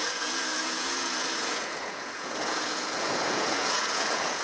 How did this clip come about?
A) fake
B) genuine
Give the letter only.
A